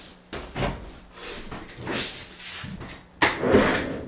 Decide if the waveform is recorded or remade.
recorded